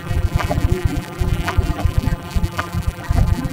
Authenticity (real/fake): fake